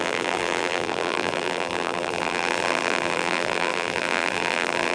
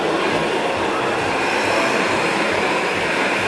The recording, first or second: second